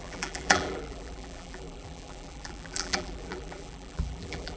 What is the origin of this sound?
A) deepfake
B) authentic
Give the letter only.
A